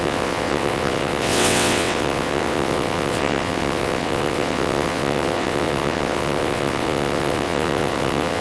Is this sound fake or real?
fake